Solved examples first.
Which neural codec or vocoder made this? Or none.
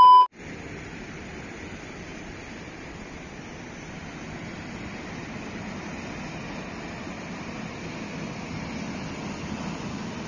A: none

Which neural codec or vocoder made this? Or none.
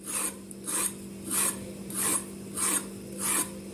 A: none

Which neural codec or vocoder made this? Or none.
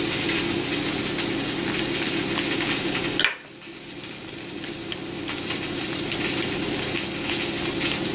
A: none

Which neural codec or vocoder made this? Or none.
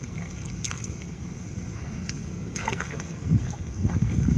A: codec, SNAC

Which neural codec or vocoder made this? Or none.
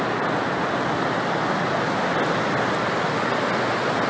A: none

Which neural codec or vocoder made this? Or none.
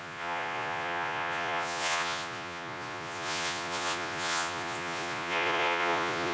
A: vocoder, Vocos